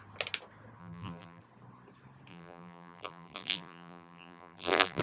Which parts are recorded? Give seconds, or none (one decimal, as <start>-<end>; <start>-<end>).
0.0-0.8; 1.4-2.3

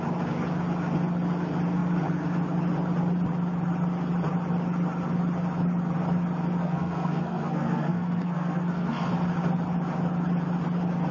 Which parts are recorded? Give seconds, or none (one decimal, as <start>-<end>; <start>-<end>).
0.0-6.6; 9.1-11.1

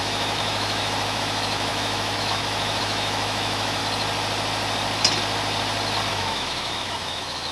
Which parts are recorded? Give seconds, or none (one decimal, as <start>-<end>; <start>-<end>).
3.8-6.1

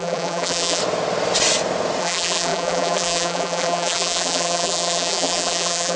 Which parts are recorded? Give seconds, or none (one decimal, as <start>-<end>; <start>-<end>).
0.8-2.0

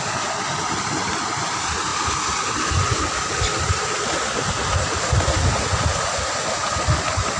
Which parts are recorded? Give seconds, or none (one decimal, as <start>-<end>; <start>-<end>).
0.0-7.4

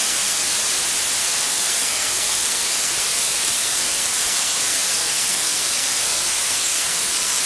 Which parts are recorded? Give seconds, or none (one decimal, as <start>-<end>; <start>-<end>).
0.6-1.2